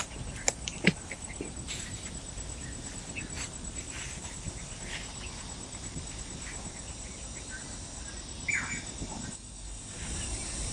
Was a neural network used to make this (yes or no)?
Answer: no